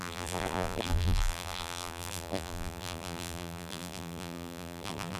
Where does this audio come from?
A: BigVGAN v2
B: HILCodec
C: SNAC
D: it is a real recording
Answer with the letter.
A